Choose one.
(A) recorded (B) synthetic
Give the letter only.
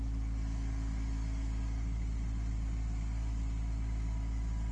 A